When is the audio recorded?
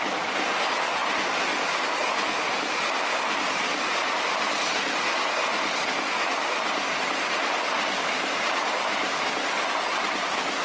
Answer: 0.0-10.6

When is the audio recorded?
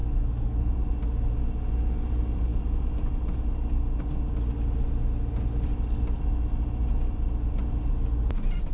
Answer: 0.0-8.7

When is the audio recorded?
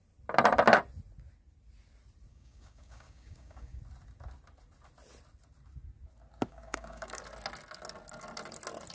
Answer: 0.0-2.3; 3.8-6.5; 7.2-8.9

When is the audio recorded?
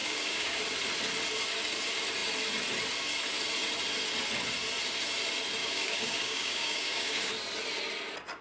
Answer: 0.6-5.6; 7.3-8.4